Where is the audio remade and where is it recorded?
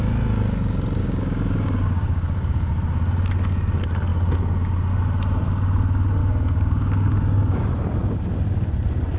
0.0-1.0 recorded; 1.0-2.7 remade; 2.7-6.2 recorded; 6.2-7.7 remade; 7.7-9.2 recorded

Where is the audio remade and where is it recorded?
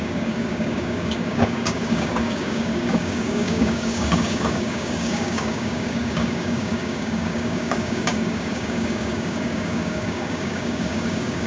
0.0-11.5 remade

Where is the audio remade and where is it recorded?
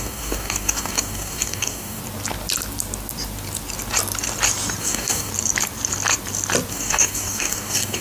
0.0-2.0 remade; 2.0-4.8 recorded; 4.8-5.3 remade; 5.3-6.7 recorded; 6.7-8.0 remade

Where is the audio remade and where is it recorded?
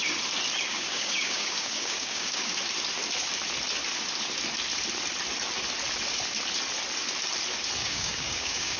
0.0-0.7 recorded; 0.7-2.5 remade; 2.5-7.8 recorded; 7.8-8.8 remade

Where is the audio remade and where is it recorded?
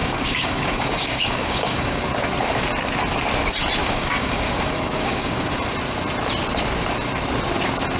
0.0-2.0 remade; 2.0-3.8 recorded; 3.8-5.5 remade; 5.5-8.0 recorded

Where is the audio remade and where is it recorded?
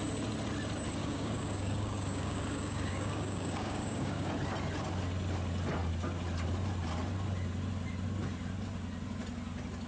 0.0-1.0 recorded; 1.0-4.3 remade; 4.3-9.9 recorded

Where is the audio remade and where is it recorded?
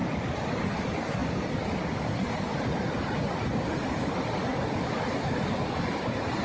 0.0-6.4 recorded